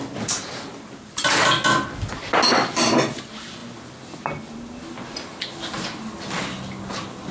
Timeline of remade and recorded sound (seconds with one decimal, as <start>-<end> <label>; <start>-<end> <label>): 0.0-7.3 recorded